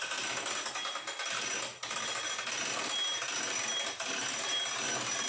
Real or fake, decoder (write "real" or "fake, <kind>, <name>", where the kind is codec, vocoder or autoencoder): real